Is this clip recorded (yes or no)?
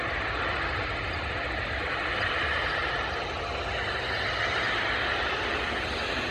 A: yes